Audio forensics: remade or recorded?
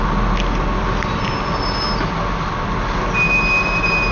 recorded